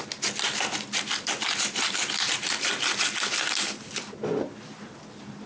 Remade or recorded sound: recorded